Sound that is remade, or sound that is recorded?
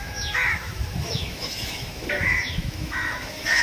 remade